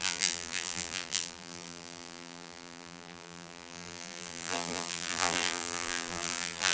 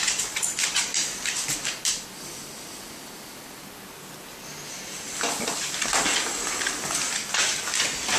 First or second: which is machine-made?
first